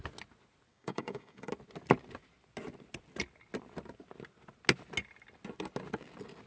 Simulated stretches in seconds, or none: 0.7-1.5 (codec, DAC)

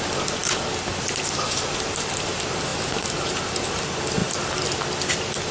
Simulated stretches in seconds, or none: none

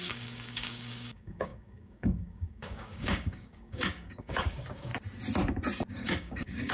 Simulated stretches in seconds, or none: 0.0-4.9 (codec, DAC); 5.9-6.7

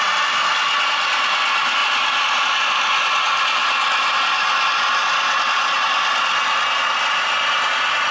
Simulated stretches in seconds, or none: none

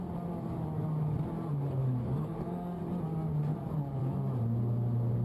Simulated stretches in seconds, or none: 1.8-2.8 (codec, DAC); 3.5-4.0

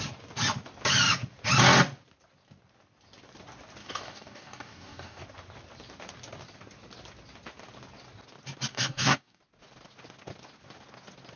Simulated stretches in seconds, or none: 3.8-5.2 (codec, DAC); 8.7-9.4

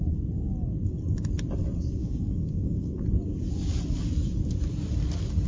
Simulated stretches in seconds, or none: 2.0-3.0 (codec, DAC)